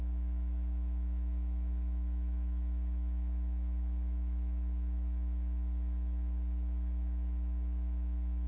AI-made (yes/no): yes